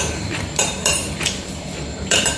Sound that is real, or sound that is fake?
fake